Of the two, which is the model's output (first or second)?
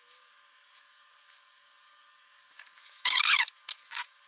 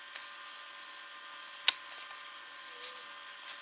first